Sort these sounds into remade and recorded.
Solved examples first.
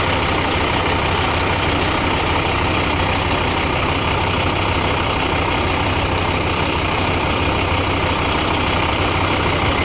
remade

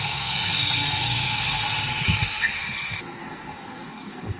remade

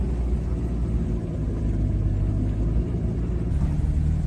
recorded